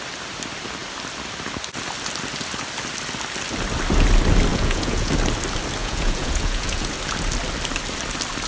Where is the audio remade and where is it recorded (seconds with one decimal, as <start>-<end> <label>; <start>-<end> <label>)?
0.0-4.5 recorded; 4.5-5.1 remade; 5.1-5.8 recorded; 5.8-6.9 remade; 6.9-8.5 recorded